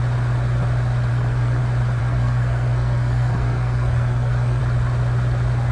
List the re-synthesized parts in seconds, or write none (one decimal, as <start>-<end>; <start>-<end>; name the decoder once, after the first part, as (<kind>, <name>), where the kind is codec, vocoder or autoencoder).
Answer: 1.1-1.6 (codec, SNAC); 2.0-4.6